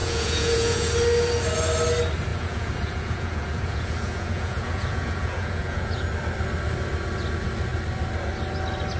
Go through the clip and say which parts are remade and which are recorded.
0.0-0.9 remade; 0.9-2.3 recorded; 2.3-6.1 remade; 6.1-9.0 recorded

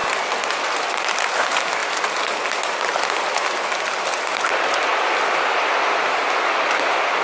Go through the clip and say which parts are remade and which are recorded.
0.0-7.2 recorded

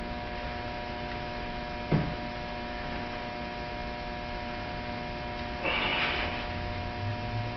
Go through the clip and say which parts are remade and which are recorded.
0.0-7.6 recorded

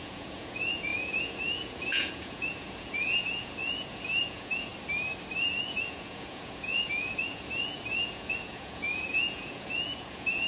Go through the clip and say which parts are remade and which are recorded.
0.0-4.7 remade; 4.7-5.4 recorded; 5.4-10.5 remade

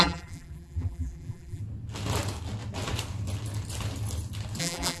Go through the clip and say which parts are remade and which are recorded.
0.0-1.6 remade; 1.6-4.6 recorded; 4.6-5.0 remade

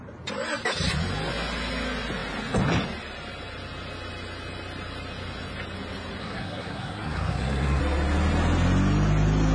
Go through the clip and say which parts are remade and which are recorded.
0.0-6.2 recorded; 6.2-7.8 remade; 7.8-9.5 recorded

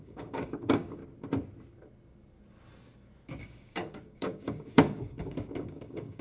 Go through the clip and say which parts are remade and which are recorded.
0.0-1.0 remade; 1.0-3.4 recorded; 3.4-6.2 remade